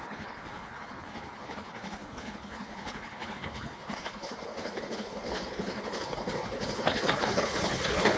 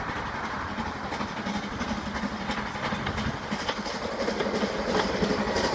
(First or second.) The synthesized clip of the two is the first